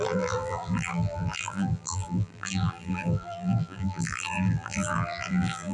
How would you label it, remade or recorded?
remade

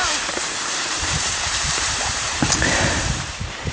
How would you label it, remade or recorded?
remade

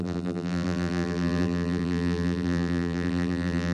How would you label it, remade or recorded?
remade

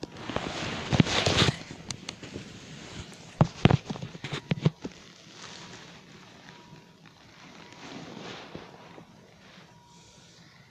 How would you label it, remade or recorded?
remade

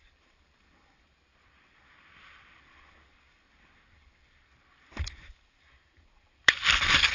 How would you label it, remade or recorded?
remade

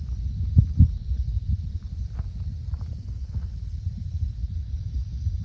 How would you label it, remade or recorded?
remade